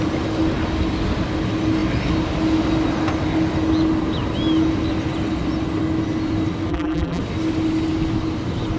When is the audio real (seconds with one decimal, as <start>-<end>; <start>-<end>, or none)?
0.0-6.7; 7.2-8.8